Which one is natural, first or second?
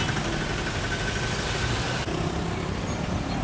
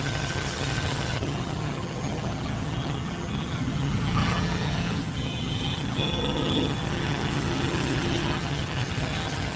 first